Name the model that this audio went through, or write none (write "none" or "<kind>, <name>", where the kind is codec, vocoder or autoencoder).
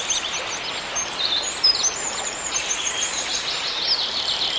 none